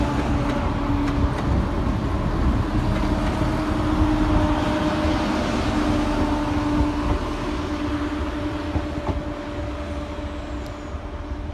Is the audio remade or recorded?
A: recorded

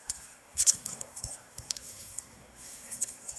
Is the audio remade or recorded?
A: remade